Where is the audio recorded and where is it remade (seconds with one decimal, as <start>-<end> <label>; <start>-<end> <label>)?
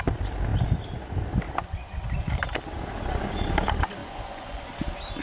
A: 0.0-4.0 recorded; 4.0-4.6 remade; 4.6-5.2 recorded